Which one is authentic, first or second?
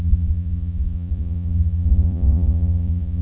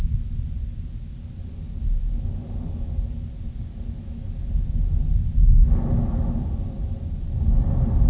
second